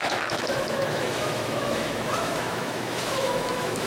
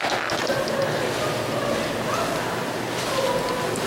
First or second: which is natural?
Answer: second